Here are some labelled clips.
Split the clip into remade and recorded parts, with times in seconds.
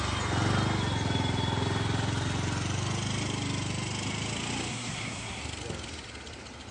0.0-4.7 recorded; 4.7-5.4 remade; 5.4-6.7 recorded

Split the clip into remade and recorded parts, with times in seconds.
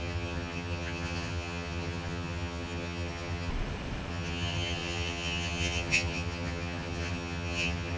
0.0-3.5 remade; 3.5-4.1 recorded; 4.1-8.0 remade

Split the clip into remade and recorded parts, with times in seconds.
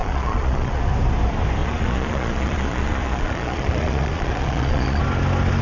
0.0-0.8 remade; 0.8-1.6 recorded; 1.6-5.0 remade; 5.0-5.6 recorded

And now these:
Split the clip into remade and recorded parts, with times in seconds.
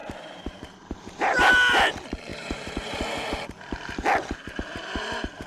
0.0-1.5 remade; 1.5-2.3 recorded; 2.3-3.0 remade; 3.0-5.5 recorded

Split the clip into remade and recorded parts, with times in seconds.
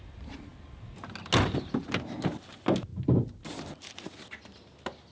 0.0-5.1 recorded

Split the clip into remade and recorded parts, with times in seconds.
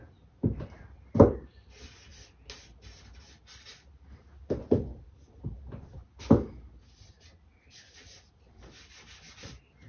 0.0-9.9 recorded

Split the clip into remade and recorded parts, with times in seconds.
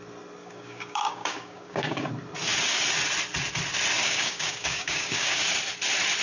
0.0-0.4 recorded; 0.4-2.1 remade; 2.1-4.0 recorded; 4.0-5.4 remade; 5.4-6.2 recorded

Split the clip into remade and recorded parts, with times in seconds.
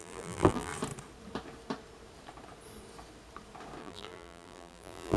0.0-0.7 remade; 0.7-3.8 recorded; 3.8-5.2 remade